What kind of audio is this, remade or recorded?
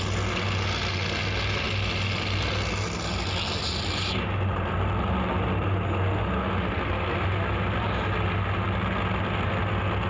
recorded